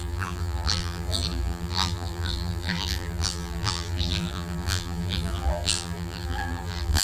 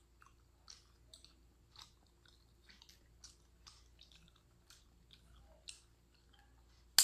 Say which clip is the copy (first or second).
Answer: first